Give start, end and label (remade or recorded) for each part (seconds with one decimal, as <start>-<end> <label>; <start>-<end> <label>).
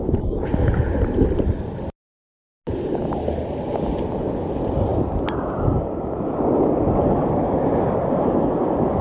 0.0-9.0 recorded